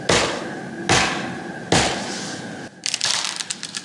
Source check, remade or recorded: recorded